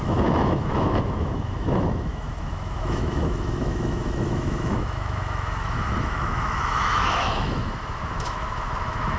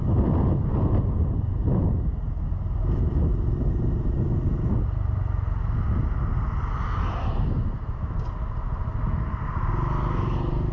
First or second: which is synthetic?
first